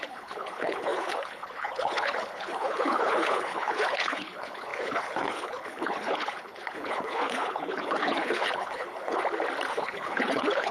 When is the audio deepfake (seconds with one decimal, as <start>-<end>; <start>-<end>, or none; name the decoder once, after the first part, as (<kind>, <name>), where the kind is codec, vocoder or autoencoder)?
0.0-9.2 (codec, HILCodec); 9.7-10.7